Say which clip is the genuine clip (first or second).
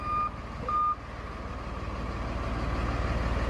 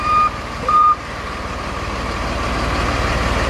first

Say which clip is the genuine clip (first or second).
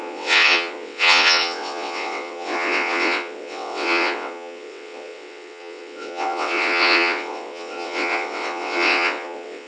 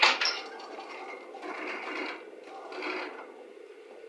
second